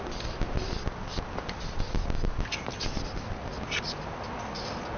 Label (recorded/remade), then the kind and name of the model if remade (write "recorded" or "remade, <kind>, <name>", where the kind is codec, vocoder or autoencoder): recorded